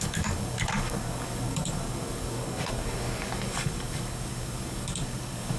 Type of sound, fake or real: fake